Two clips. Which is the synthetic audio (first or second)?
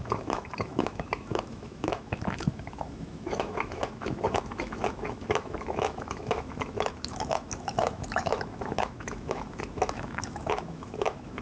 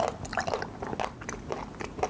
first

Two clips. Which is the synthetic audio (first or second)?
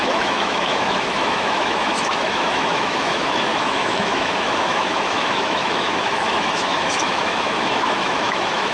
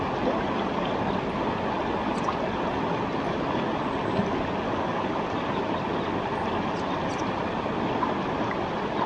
first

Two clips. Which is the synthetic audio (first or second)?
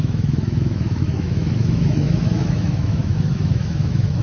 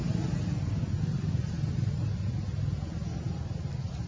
first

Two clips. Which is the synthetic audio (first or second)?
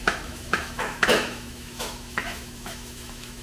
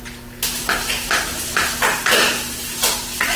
first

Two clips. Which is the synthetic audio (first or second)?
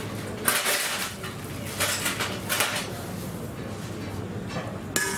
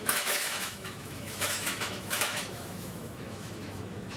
second